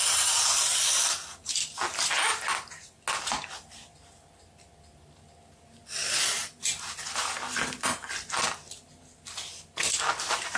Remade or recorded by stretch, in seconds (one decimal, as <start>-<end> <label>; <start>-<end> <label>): 0.0-10.6 recorded